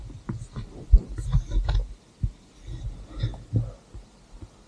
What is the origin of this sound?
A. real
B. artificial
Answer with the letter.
A